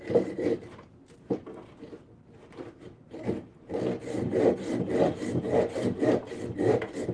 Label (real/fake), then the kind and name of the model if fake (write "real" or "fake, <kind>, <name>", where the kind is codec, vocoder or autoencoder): real